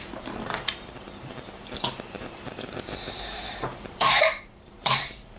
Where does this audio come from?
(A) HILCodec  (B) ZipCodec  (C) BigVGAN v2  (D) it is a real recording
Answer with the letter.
C